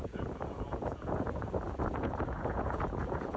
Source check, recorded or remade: remade